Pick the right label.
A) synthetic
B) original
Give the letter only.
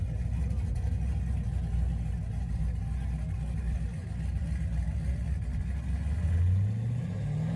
B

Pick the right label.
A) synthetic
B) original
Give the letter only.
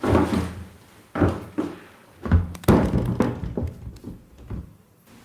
B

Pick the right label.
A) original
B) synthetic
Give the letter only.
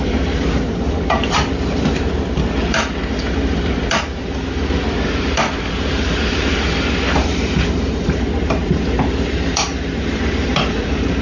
B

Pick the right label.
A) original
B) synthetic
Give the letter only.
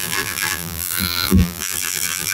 B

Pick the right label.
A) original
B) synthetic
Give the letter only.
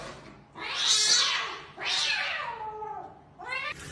A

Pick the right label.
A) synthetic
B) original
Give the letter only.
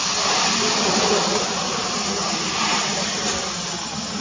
B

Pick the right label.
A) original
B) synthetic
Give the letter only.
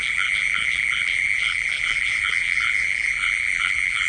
B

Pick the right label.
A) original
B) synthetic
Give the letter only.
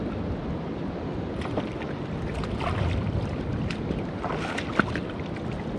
A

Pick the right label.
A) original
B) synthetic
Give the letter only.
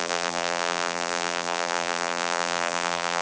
B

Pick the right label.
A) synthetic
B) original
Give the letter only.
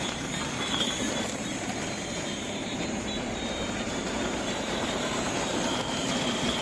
A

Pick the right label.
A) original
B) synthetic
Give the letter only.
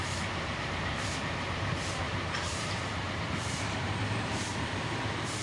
B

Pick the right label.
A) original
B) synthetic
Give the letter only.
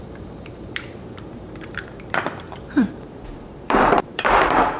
B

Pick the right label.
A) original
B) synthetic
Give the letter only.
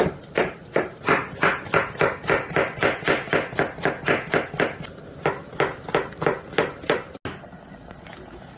A